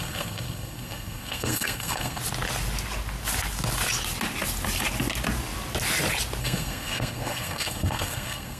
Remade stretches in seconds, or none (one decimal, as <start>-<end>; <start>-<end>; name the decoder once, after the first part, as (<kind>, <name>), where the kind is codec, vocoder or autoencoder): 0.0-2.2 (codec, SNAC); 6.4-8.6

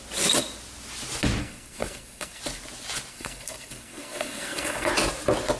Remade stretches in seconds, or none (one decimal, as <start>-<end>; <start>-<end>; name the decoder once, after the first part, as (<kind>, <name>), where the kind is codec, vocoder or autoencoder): 1.4-2.4 (codec, SNAC); 3.1-4.9

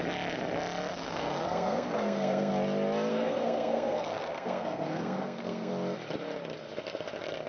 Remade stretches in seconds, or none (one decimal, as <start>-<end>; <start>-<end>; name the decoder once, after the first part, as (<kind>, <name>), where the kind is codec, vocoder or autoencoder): 0.9-2.5 (codec, SNAC); 3.1-5.7

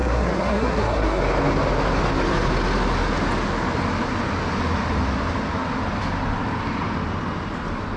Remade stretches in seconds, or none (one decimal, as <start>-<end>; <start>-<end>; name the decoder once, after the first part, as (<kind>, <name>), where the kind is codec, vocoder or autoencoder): 0.0-1.2 (codec, SNAC)

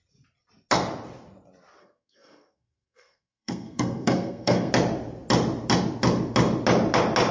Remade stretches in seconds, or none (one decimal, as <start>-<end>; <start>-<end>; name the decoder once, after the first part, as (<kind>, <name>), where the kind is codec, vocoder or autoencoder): 1.8-4.7 (codec, SNAC)

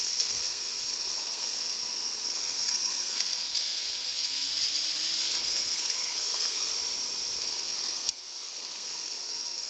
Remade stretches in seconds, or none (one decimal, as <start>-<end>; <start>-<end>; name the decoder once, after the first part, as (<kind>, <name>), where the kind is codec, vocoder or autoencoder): 0.0-4.5 (codec, SNAC); 5.2-6.7; 7.4-9.7

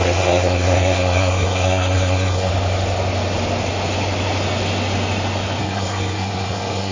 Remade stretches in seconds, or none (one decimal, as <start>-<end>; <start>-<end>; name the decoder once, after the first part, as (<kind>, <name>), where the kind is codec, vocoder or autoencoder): 0.0-2.5 (codec, SNAC); 5.6-6.9